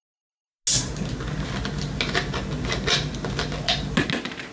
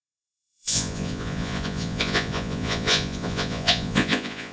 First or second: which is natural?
first